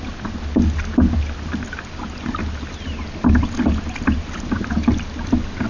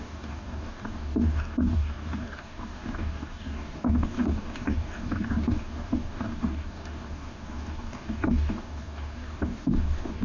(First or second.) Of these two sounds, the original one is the first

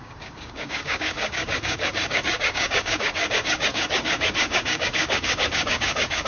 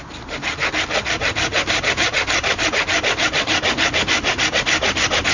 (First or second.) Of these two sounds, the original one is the second